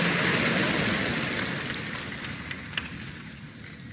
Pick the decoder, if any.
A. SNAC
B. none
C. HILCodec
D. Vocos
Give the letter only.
B